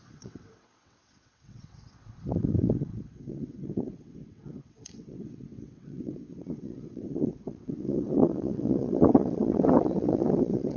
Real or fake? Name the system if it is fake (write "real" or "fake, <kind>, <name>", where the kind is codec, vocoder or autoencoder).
fake, vocoder, WaveNeXt